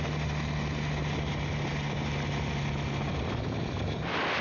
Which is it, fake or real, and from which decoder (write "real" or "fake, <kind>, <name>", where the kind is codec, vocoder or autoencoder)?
real